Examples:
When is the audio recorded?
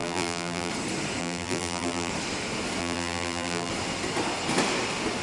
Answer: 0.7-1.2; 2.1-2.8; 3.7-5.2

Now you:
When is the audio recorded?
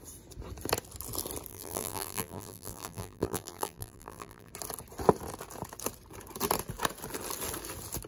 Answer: 0.0-1.5; 4.5-8.1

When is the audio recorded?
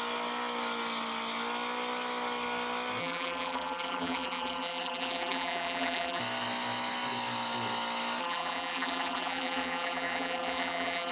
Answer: 0.0-3.0; 6.2-8.2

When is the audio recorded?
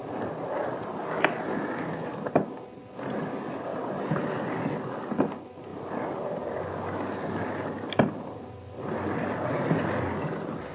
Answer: 0.0-3.7; 4.6-10.7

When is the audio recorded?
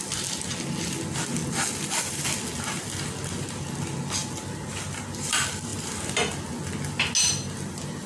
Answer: 0.0-8.1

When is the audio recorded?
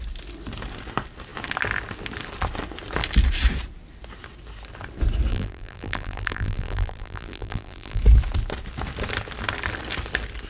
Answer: 0.0-5.3; 8.0-10.5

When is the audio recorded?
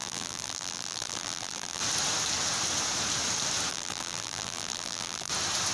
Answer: 1.8-3.7; 5.3-5.7